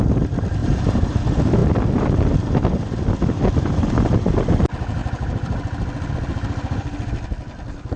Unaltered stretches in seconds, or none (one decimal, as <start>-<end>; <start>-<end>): 0.0-0.6; 1.2-8.0